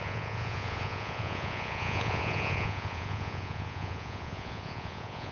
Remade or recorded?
remade